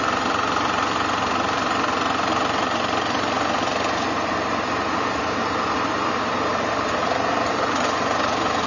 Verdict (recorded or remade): remade